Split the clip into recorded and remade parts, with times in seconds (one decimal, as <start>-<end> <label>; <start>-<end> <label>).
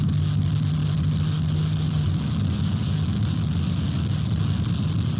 0.0-5.2 recorded